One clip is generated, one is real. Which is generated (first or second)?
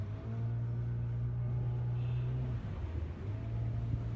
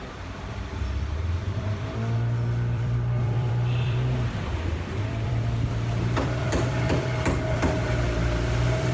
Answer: second